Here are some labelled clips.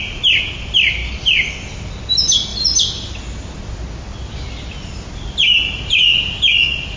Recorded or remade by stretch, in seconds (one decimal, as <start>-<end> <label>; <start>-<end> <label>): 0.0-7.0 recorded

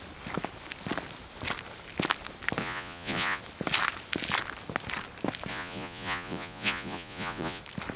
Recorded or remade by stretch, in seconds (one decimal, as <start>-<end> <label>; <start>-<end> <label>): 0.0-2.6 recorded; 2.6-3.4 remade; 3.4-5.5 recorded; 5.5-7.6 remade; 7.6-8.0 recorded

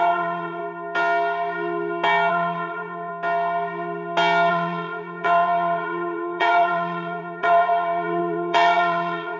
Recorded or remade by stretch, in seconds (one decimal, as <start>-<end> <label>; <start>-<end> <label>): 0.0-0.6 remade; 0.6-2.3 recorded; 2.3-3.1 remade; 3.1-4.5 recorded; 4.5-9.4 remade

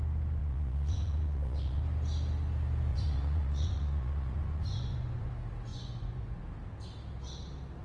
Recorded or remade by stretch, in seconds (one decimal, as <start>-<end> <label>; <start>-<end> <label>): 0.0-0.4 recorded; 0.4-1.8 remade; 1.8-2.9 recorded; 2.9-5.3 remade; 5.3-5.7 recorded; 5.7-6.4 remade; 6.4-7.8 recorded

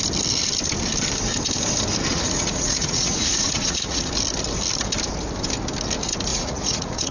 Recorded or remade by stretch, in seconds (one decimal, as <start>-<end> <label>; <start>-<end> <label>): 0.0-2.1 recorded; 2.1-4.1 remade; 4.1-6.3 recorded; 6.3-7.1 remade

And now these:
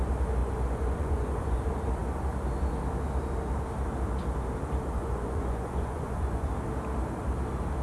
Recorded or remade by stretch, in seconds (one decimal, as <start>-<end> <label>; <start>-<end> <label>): 0.0-0.4 recorded; 0.4-1.6 remade; 1.6-5.0 recorded; 5.0-6.5 remade; 6.5-7.8 recorded

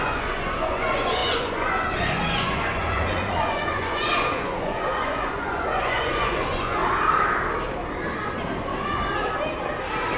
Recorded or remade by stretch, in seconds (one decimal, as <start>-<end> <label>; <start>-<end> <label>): 0.0-6.8 remade; 6.8-10.2 recorded